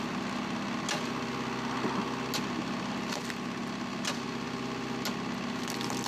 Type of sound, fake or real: real